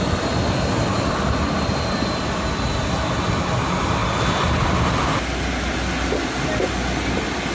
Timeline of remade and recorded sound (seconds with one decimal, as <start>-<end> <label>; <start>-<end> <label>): 0.0-7.5 recorded